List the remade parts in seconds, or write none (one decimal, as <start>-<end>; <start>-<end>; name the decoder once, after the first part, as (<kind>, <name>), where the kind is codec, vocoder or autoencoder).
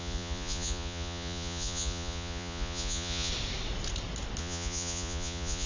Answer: 0.0-3.3 (vocoder, Vocos); 4.4-5.7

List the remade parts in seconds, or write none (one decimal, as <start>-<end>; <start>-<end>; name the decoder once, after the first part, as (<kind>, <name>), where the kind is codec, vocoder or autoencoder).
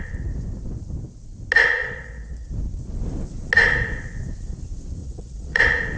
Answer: 1.8-2.5 (vocoder, Vocos); 5.0-5.6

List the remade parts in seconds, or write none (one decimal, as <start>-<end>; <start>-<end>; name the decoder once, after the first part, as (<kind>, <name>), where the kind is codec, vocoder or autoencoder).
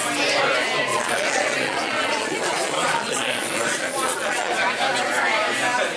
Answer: 0.9-4.5 (vocoder, Vocos)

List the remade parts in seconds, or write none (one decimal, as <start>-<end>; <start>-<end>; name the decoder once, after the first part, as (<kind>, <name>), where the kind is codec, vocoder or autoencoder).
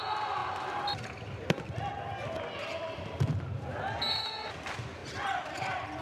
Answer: none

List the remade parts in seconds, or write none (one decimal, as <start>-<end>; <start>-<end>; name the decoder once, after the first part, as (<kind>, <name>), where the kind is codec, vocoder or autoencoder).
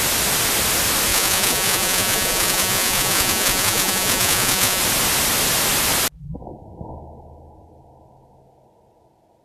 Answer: 1.1-4.8 (vocoder, Vocos)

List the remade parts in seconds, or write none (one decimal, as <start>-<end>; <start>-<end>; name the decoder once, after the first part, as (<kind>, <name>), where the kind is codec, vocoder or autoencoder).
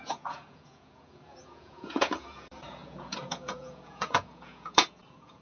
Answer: 0.0-5.4 (vocoder, Vocos)